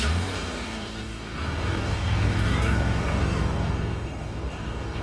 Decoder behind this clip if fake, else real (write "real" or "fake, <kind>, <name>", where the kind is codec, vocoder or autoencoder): fake, codec, DAC